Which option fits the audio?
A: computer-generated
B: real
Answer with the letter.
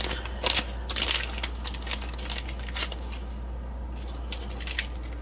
B